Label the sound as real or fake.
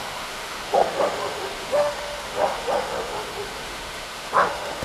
fake